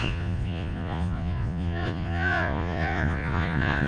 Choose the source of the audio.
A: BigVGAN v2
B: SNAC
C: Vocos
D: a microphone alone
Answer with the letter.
C